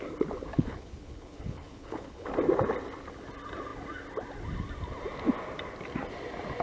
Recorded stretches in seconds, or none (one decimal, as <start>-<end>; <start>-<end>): 0.0-0.5; 2.3-6.6